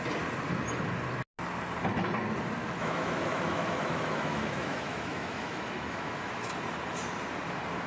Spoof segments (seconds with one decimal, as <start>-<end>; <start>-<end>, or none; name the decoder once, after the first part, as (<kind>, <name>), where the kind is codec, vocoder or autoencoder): 2.6-6.5 (autoencoder, DAC-VAE)